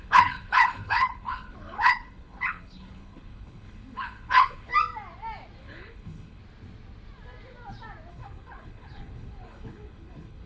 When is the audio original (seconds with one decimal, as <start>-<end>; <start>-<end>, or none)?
4.7-5.6; 6.4-8.1